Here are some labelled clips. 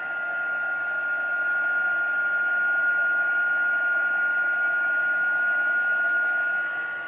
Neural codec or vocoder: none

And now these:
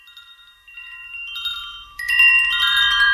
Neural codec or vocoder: vocoder, BigVGAN v2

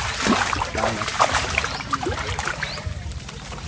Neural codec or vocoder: vocoder, BigVGAN v2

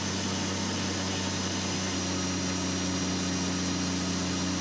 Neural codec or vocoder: none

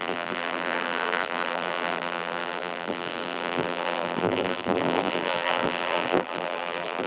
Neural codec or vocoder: vocoder, BigVGAN v2